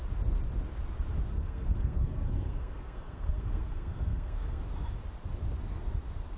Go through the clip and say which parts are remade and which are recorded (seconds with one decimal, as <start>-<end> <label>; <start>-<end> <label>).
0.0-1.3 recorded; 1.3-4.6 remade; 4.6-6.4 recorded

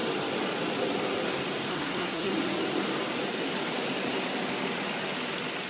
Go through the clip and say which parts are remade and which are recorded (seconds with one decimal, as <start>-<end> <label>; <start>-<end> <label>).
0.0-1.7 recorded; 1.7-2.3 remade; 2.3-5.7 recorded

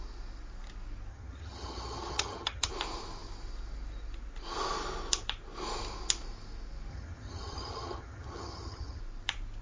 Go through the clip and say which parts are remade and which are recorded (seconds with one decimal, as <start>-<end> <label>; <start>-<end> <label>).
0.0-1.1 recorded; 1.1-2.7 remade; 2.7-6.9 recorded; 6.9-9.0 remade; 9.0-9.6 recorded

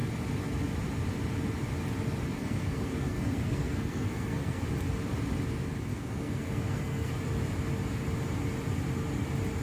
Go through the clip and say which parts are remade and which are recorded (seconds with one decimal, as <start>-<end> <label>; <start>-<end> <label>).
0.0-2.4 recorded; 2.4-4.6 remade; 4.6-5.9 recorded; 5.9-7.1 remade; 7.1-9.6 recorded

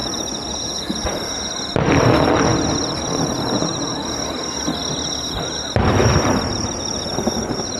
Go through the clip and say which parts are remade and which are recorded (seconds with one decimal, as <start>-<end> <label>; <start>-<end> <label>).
0.0-7.8 recorded